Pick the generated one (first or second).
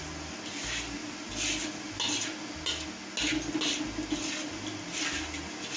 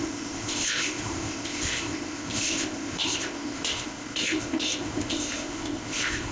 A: second